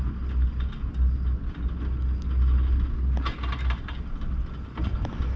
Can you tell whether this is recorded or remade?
recorded